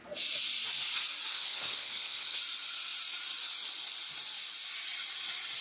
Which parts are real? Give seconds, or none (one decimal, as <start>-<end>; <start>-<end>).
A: 0.0-1.3; 2.4-5.6